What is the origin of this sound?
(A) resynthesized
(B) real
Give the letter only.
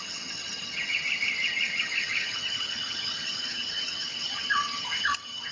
A